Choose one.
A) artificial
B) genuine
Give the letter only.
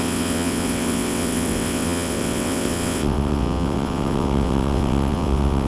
A